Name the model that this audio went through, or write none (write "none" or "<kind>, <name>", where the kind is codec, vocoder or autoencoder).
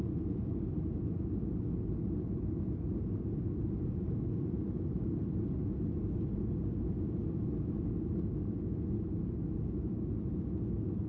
none